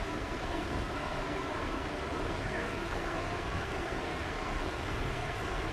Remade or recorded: remade